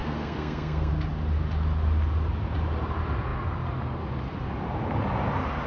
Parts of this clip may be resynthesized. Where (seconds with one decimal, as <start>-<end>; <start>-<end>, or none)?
0.0-0.9